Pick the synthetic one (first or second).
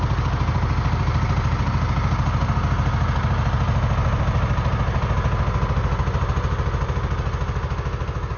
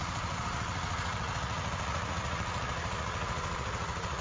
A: second